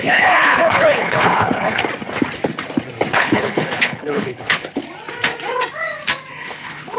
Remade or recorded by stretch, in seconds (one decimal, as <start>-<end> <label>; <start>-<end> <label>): 0.0-1.8 remade; 1.8-3.1 recorded; 3.1-4.8 remade; 4.8-6.3 recorded; 6.3-7.0 remade